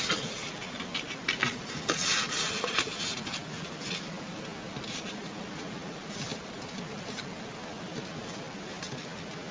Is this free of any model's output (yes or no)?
yes